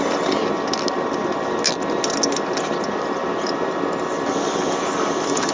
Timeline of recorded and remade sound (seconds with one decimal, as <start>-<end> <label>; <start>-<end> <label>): 0.0-5.5 recorded